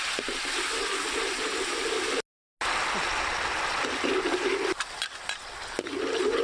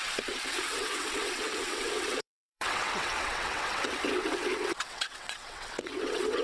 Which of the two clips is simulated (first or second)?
second